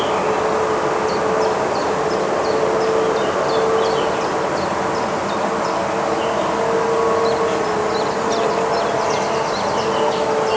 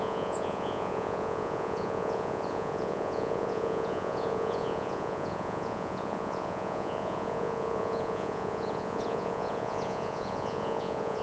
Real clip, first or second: first